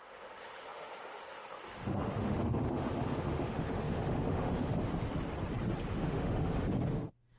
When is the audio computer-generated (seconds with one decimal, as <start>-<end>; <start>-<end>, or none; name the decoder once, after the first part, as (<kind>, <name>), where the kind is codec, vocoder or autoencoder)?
0.0-4.9 (autoencoder, DAC-VAE); 5.9-7.4